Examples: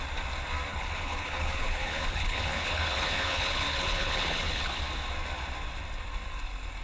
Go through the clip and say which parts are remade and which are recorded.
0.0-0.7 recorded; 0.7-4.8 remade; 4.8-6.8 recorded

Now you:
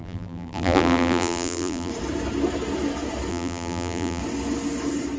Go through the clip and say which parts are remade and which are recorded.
0.0-1.9 remade; 1.9-3.3 recorded; 3.3-4.2 remade; 4.2-5.2 recorded

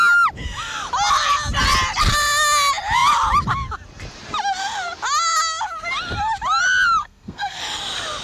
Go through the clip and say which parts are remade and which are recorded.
0.0-7.0 recorded; 7.0-7.6 remade; 7.6-8.2 recorded

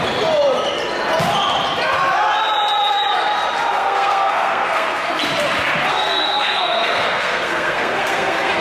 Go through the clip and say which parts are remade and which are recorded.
0.0-3.8 recorded; 3.8-5.1 remade; 5.1-5.9 recorded; 5.9-8.6 remade

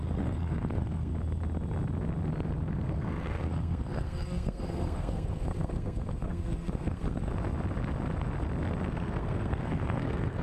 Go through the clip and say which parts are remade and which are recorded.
0.0-1.1 remade; 1.1-2.7 recorded; 2.7-7.3 remade; 7.3-8.9 recorded; 8.9-10.4 remade

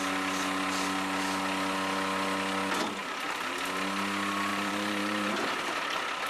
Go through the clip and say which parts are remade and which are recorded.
0.0-3.0 recorded; 3.0-3.6 remade; 3.6-4.5 recorded; 4.5-5.6 remade; 5.6-6.3 recorded

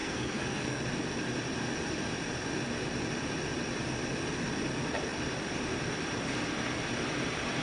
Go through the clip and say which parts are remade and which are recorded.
0.0-0.8 remade; 0.8-7.6 recorded